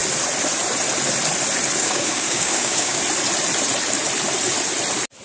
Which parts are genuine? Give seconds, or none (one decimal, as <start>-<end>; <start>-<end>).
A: 0.0-1.8; 3.0-5.2